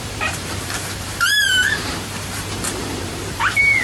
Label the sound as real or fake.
fake